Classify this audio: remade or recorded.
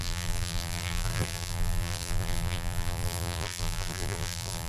remade